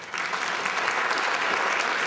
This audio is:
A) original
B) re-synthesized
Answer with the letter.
B